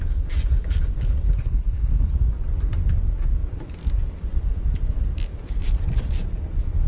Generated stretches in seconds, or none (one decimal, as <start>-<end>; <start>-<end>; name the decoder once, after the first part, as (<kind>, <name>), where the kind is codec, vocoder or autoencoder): 1.4-2.1 (codec, SNAC)